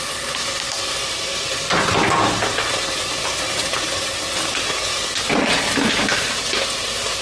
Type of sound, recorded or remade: recorded